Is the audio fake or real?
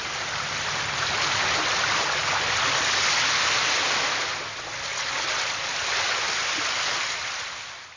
real